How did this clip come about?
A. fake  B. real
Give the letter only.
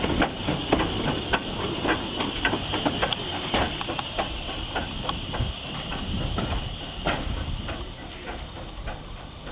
B